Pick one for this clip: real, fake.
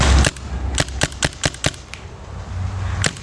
real